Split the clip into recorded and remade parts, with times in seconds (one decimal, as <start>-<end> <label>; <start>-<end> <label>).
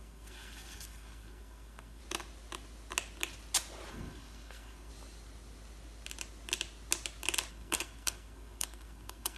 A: 0.0-2.0 remade; 2.0-3.9 recorded; 3.9-4.9 remade; 4.9-7.5 recorded; 7.5-9.4 remade